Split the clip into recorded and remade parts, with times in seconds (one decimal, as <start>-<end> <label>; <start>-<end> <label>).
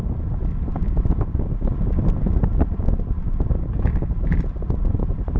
0.0-5.4 recorded